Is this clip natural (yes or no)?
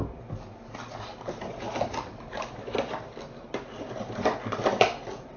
yes